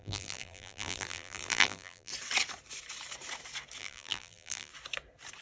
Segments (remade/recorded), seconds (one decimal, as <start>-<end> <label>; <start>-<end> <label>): 0.0-2.1 remade; 2.1-3.8 recorded; 3.8-4.7 remade; 4.7-5.4 recorded